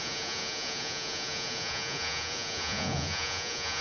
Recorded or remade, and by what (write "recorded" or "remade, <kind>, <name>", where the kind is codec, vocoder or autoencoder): remade, vocoder, Vocos